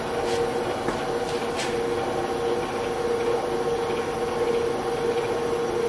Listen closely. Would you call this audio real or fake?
real